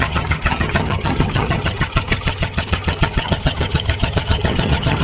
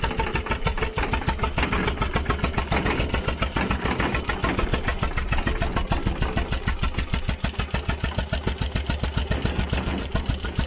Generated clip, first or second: first